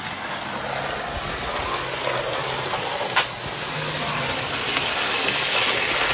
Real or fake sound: real